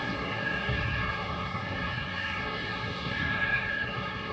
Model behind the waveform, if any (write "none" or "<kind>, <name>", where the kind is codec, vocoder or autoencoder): codec, SNAC